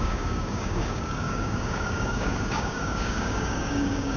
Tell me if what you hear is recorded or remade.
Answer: remade